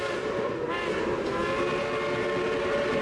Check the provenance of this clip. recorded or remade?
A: recorded